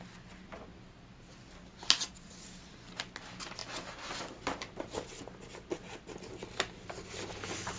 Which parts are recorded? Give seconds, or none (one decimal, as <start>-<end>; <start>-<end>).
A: 0.0-7.8